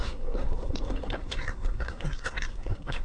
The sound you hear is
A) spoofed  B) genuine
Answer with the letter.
A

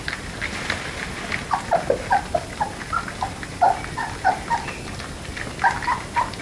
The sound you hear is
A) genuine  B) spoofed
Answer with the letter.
A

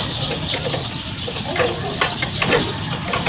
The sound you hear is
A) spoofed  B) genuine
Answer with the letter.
B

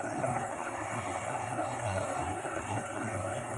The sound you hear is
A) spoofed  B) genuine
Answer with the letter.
A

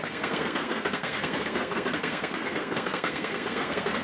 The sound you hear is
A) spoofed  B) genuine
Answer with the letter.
A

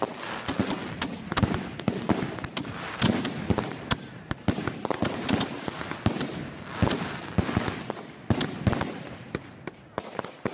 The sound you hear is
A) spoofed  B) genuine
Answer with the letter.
B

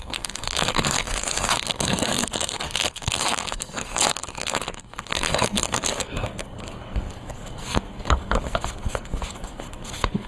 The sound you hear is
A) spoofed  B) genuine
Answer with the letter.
A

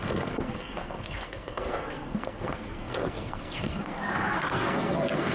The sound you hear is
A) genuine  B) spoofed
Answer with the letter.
B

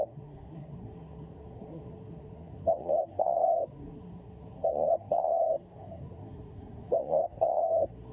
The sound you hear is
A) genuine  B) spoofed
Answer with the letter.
B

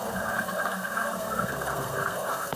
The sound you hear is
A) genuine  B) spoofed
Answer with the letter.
B